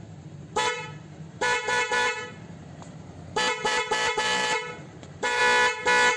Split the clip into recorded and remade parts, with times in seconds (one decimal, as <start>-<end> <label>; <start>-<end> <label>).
0.0-5.4 remade; 5.4-6.2 recorded